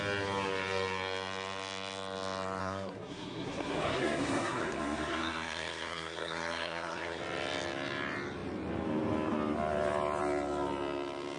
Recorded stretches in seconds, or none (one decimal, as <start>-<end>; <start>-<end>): 0.0-2.6; 7.2-11.4